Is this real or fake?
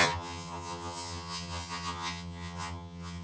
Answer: fake